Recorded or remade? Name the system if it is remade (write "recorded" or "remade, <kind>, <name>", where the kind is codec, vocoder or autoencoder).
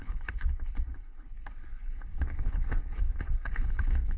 remade, codec, HILCodec